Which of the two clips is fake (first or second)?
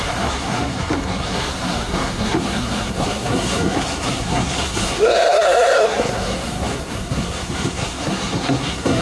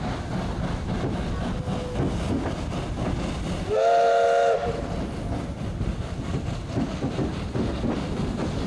first